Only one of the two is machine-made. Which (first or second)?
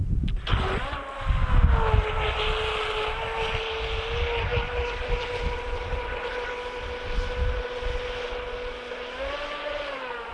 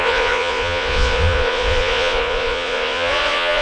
second